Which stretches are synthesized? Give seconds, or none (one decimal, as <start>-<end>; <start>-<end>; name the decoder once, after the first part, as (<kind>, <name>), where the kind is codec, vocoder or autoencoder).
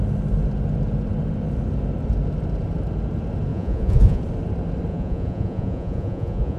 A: 3.5-4.2 (vocoder, Vocos); 4.9-6.6